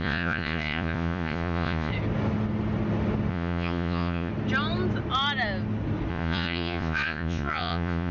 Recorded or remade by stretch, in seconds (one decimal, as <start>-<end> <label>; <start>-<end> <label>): 0.0-1.9 remade; 1.9-3.3 recorded; 3.3-4.3 remade; 4.3-6.1 recorded; 6.1-8.1 remade